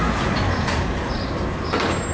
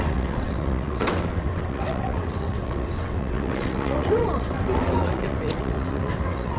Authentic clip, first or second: first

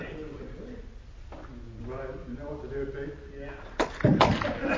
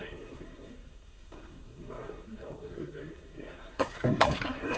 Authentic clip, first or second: first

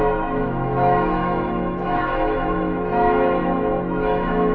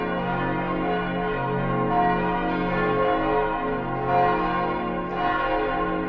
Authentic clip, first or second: second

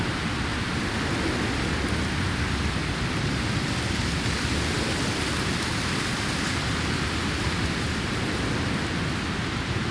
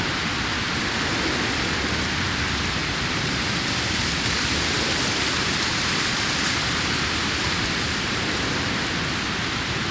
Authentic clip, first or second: first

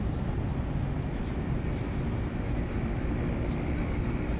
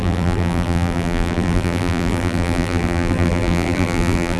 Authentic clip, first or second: first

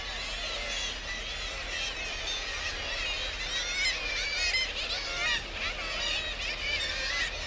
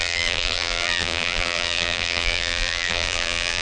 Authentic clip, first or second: first